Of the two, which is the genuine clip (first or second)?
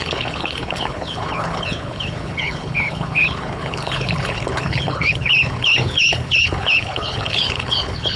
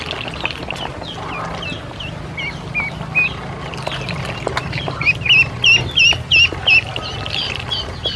second